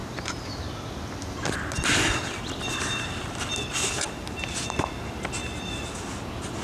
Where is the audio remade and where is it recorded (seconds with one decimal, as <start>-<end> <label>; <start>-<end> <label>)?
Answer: 0.0-5.4 recorded; 5.4-5.9 remade; 5.9-6.6 recorded